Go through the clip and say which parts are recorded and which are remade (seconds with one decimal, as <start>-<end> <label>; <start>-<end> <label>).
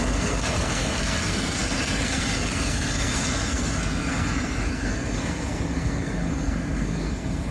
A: 0.0-7.5 remade